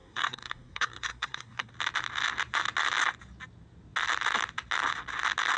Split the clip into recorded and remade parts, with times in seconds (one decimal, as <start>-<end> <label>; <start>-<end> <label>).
0.0-1.7 remade; 1.7-5.6 recorded